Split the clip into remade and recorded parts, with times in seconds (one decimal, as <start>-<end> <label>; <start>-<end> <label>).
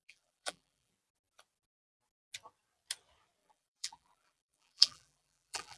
0.0-0.9 remade; 0.9-3.4 recorded; 3.4-5.8 remade